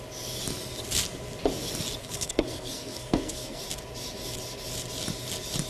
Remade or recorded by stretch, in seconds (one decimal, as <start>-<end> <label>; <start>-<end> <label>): 0.0-2.0 recorded; 2.0-3.6 remade; 3.6-5.7 recorded